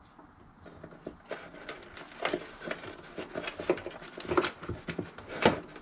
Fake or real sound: real